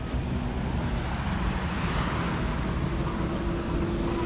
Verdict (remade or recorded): recorded